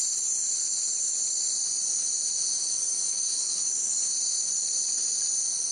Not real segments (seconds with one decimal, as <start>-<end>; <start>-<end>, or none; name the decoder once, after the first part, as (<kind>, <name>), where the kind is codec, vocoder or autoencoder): 3.1-4.0 (codec, DAC)